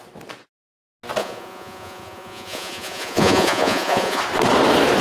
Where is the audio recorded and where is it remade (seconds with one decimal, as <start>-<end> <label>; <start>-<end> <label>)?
0.0-1.2 recorded; 1.2-4.2 remade; 4.2-5.0 recorded